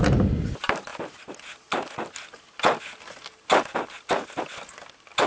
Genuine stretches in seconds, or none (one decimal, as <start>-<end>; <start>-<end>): 0.0-5.3